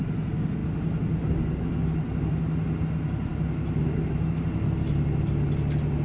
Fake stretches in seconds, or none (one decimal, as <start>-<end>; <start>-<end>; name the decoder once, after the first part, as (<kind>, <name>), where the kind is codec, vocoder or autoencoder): none